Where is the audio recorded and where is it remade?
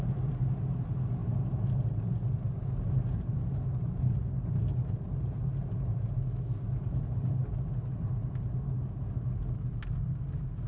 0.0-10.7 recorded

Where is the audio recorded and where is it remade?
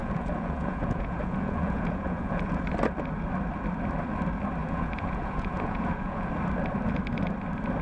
0.0-2.6 remade; 2.6-4.6 recorded; 4.6-6.3 remade; 6.3-7.8 recorded